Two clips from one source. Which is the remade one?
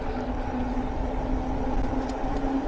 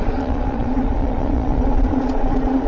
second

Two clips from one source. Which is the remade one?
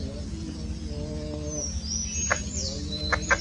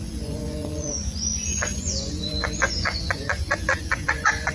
second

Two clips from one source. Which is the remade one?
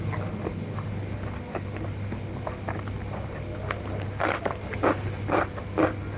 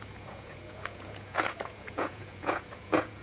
second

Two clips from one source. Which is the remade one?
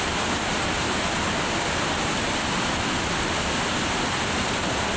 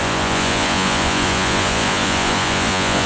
second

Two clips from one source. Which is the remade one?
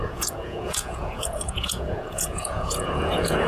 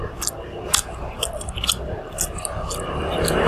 first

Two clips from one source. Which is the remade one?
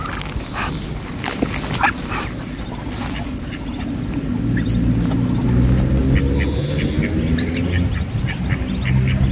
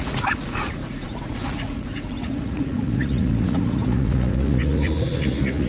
second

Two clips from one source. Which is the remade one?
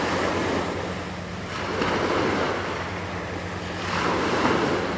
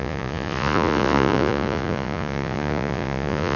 second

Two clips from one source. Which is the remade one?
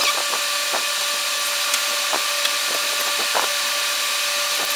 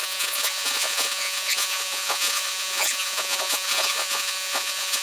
second